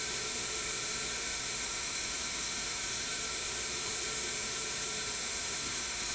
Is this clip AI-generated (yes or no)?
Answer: yes